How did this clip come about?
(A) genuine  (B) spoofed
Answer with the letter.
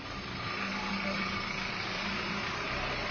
B